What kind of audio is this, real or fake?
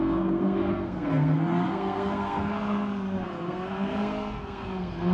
fake